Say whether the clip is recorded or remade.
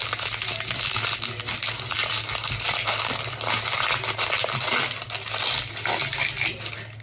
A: recorded